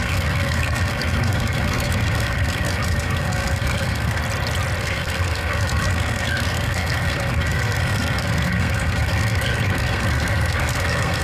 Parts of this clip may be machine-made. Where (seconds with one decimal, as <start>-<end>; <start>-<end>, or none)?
0.0-4.2; 4.8-11.2